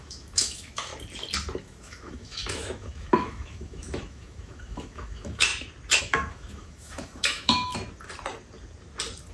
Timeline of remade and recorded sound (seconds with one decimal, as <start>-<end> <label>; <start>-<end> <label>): 0.0-0.9 remade; 0.9-1.6 recorded; 1.6-5.5 remade; 5.5-6.0 recorded; 6.0-7.7 remade; 7.7-9.3 recorded